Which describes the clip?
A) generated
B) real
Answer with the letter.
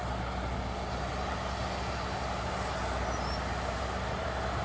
B